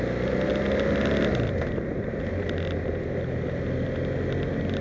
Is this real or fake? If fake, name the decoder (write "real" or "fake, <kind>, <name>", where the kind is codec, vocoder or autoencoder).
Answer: real